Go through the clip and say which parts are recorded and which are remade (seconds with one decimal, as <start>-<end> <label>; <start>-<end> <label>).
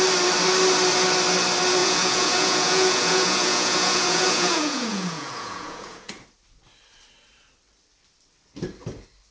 0.0-1.8 recorded; 1.8-6.1 remade; 6.1-9.3 recorded